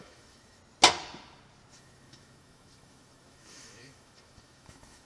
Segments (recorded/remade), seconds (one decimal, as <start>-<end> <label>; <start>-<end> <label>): 0.0-0.6 remade; 0.6-1.7 recorded; 1.7-5.0 remade